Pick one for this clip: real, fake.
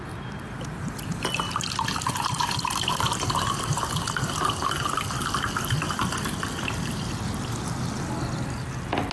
real